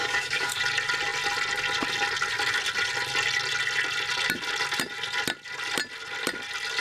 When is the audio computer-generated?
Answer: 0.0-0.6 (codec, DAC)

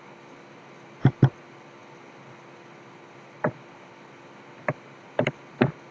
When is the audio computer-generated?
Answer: none